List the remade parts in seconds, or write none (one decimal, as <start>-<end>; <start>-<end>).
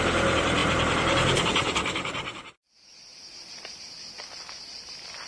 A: 0.0-5.3